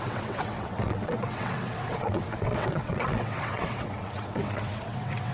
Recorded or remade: remade